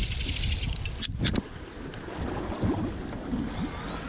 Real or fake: real